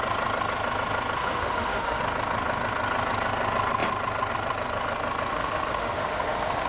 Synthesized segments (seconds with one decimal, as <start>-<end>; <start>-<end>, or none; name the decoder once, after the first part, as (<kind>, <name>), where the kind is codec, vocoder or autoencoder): 1.2-2.0 (autoencoder, DAC-VAE); 5.3-6.7